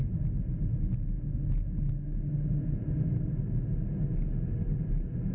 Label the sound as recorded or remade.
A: recorded